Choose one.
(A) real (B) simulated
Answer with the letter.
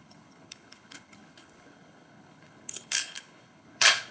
B